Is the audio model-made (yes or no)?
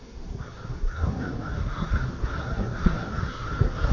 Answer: yes